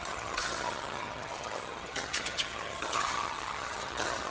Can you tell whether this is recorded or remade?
remade